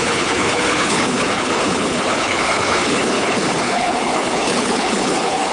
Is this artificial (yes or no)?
yes